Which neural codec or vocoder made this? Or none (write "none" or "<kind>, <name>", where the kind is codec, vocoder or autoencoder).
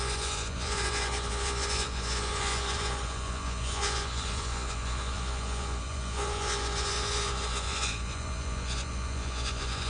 vocoder, Vocos